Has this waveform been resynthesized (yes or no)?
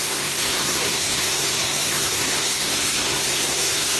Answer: yes